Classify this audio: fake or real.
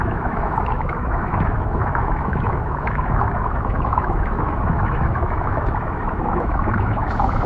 fake